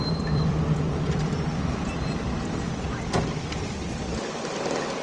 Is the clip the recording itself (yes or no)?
no